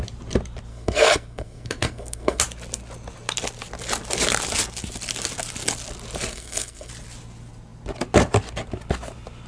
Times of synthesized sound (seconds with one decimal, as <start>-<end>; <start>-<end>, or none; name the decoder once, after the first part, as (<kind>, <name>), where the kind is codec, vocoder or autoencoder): 0.7-2.4 (codec, SNAC); 6.3-6.9